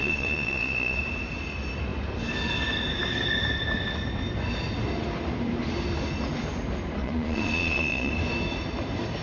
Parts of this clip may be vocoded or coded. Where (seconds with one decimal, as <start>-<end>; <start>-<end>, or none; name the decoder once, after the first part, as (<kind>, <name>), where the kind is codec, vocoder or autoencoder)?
0.0-1.0 (vocoder, Vocos); 7.0-8.1

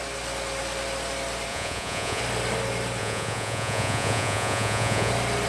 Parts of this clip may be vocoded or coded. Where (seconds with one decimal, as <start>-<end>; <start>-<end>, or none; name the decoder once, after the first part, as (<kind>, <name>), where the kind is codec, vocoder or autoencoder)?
1.5-2.2 (vocoder, Vocos); 3.0-5.1